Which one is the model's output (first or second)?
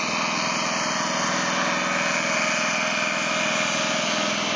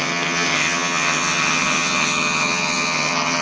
second